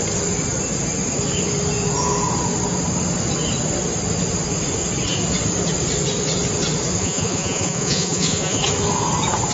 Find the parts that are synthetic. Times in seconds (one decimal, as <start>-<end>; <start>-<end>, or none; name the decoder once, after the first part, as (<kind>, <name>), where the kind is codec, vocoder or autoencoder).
7.0-8.6 (vocoder, Vocos)

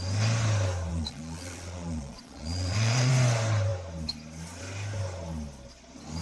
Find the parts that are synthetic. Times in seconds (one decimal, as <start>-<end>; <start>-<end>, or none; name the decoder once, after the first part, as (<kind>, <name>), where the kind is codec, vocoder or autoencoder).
0.9-3.1 (vocoder, Vocos)

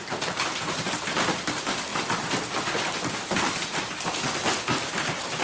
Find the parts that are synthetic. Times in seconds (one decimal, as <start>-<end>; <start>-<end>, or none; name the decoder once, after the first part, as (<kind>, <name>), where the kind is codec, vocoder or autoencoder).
none

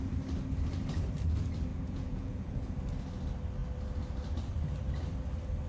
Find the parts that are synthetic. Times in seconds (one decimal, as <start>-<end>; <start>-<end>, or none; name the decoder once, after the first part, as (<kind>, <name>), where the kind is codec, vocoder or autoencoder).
1.7-2.7 (vocoder, Vocos)